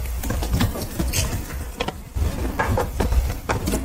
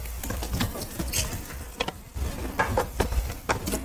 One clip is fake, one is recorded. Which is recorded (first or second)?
second